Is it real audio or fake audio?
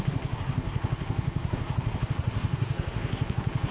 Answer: fake